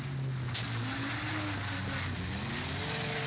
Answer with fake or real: real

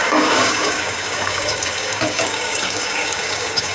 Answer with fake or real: fake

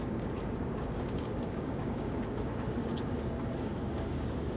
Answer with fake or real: fake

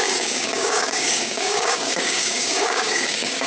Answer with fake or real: fake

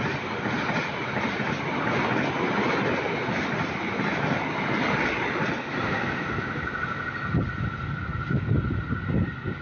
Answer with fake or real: real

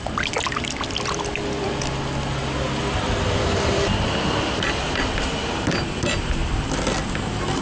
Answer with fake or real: real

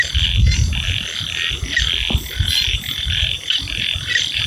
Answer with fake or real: real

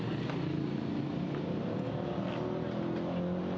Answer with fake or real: real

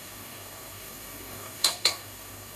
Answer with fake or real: fake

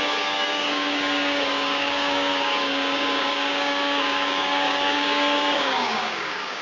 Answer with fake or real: fake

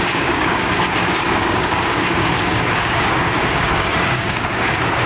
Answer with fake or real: fake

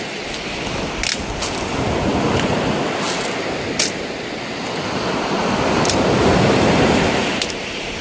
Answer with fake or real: real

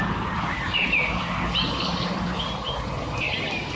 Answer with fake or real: real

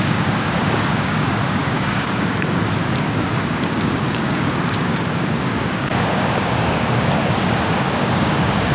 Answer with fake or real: fake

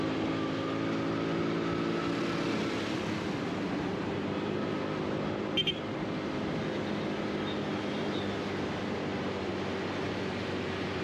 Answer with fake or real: real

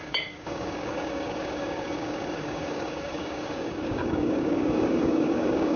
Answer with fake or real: fake